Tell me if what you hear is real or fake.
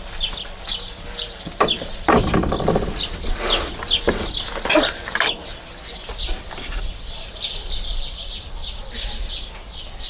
real